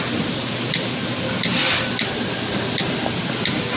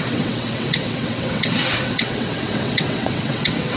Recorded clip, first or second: first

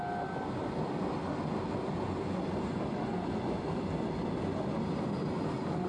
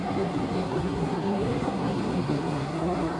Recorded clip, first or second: first